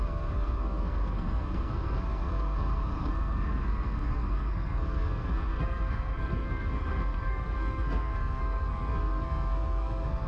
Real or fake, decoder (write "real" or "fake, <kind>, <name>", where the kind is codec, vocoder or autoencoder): fake, codec, SNAC